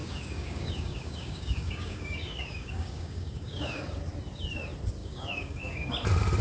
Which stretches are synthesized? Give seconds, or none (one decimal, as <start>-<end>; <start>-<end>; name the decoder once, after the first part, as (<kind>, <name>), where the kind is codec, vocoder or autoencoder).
0.0-3.8 (codec, DAC); 5.0-5.9